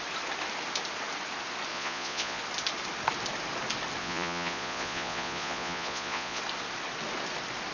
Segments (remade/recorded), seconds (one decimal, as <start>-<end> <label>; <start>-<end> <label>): 0.0-1.7 recorded; 1.7-2.4 remade; 2.4-4.0 recorded; 4.0-6.4 remade; 6.4-7.7 recorded